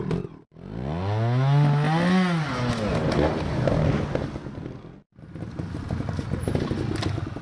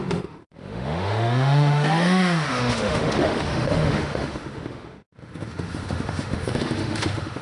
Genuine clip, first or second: first